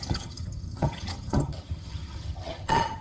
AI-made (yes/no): yes